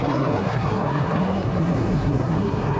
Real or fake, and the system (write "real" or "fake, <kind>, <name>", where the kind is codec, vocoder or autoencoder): fake, codec, SNAC